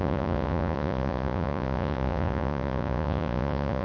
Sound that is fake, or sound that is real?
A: fake